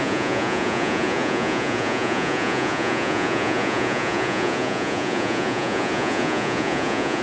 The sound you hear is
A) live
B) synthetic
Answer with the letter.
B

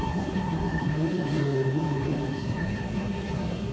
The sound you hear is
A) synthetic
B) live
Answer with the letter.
A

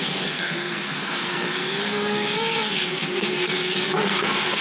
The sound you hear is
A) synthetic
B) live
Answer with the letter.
A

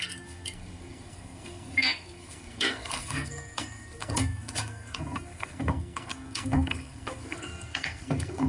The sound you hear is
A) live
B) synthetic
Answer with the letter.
B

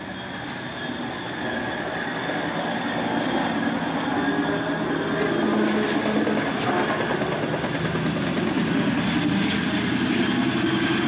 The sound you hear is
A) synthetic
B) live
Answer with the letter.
B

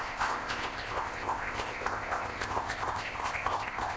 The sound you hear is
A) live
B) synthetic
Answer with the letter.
B